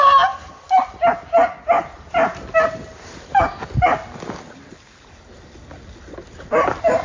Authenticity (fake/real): real